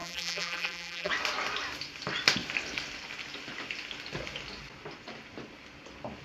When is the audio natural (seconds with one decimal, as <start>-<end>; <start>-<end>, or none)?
1.1-6.2